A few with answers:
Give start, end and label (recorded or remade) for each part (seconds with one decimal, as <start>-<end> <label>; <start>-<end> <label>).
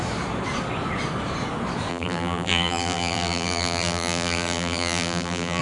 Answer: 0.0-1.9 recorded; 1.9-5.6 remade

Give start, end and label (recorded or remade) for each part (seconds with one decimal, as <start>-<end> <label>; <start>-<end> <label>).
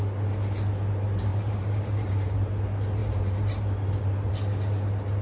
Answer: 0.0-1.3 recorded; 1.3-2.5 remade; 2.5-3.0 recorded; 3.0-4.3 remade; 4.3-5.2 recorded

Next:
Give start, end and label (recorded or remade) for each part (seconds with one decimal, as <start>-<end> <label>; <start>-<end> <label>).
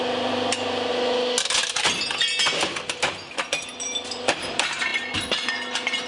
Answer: 0.0-0.9 remade; 0.9-3.6 recorded; 3.6-4.9 remade; 4.9-6.1 recorded